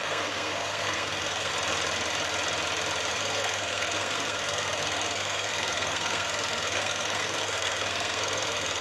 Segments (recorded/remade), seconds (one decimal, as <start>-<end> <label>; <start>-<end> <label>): 0.0-1.5 remade; 1.5-3.1 recorded; 3.1-8.8 remade